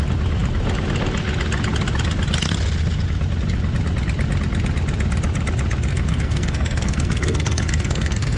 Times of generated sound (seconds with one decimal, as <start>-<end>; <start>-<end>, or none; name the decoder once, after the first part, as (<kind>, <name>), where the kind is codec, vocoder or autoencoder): 5.9-8.4 (codec, SNAC)